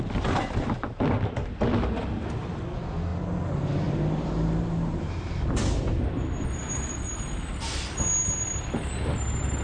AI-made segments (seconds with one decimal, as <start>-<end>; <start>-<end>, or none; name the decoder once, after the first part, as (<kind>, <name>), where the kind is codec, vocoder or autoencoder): none